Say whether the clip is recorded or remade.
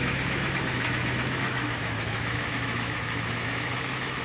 remade